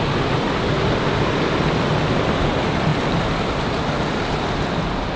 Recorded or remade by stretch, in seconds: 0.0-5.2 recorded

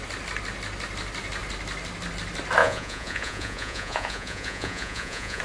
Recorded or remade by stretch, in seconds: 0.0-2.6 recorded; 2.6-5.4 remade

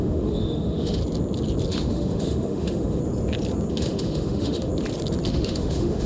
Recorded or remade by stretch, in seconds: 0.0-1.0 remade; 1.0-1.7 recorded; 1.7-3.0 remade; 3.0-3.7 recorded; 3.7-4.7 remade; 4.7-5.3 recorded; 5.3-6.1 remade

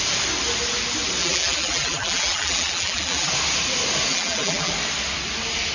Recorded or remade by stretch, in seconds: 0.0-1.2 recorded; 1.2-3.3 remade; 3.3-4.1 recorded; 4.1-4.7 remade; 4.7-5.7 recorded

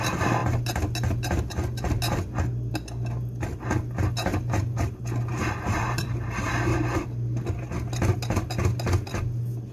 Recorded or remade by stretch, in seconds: 0.0-4.3 recorded; 4.3-5.0 remade; 5.0-5.4 recorded; 5.4-6.5 remade; 6.5-9.7 recorded

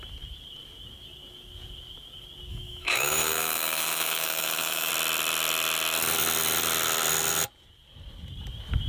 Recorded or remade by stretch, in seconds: 0.0-2.5 recorded; 2.5-4.9 remade; 4.9-8.9 recorded